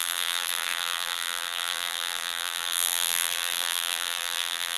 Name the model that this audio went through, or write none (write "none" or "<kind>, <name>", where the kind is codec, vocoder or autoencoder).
vocoder, BigVGAN v2